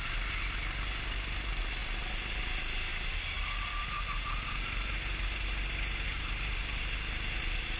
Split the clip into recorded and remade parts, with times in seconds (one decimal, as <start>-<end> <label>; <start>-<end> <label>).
0.0-7.8 recorded